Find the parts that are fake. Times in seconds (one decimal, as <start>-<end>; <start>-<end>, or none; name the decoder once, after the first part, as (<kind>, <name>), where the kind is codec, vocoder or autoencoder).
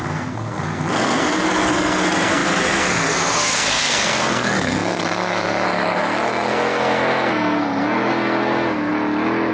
0.0-8.9 (codec, SNAC)